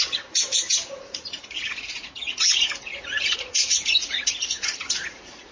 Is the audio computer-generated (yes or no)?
yes